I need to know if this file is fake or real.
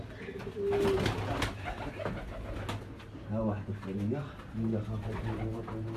real